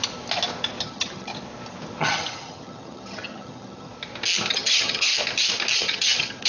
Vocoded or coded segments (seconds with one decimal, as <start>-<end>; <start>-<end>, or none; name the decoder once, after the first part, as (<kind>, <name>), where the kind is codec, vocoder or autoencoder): 0.8-1.3 (vocoder, HiFi-GAN); 2.0-3.9; 4.5-5.1; 5.8-6.5